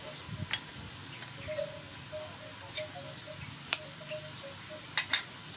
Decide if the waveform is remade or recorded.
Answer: recorded